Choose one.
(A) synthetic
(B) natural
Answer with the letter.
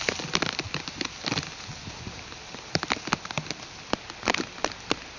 B